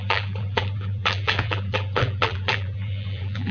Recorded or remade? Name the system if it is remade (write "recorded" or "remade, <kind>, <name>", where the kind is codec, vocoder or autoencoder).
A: remade, vocoder, BigVGAN v2